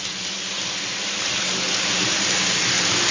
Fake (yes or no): no